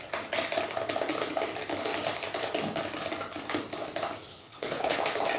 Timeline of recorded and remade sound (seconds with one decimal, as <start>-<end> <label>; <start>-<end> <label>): 0.0-4.4 recorded; 4.4-5.0 remade; 5.0-5.4 recorded